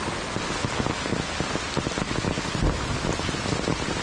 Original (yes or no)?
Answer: yes